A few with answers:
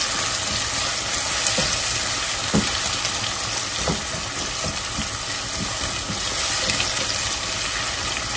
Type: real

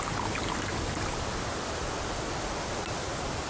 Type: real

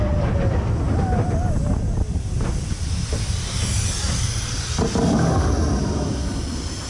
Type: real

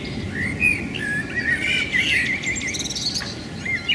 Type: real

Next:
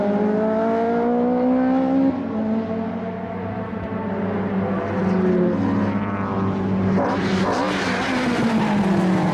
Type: real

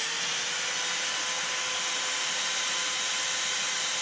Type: real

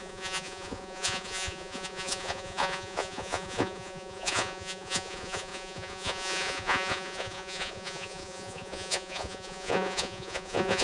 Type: fake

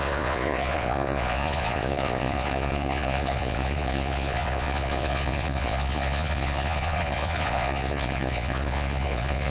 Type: fake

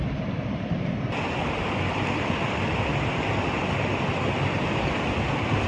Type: real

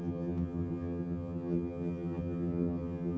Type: fake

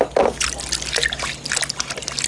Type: real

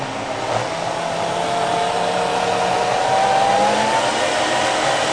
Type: real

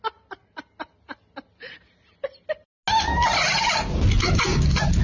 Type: real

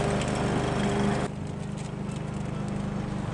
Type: real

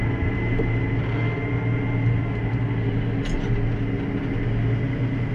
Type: real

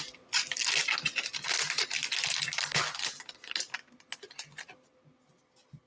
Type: real